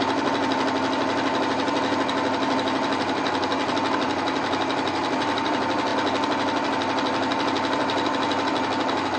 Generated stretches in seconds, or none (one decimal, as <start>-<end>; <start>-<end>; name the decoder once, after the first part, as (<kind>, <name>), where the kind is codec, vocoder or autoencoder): none